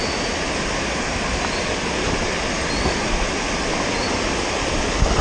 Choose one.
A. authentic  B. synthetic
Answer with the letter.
A